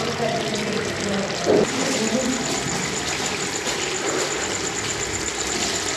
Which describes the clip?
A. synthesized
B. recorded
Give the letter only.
B